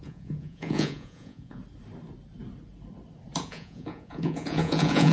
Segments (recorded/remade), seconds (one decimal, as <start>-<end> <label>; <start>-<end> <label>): 0.0-1.6 remade; 1.6-3.4 recorded; 3.4-5.1 remade